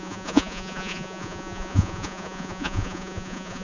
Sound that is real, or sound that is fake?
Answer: fake